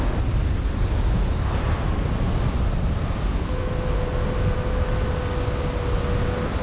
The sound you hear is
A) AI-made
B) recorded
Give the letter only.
B